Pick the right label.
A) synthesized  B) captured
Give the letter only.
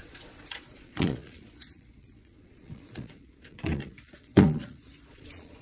A